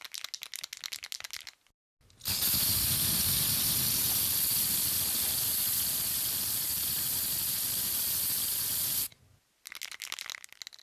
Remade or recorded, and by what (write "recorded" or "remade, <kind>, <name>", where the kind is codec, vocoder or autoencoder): recorded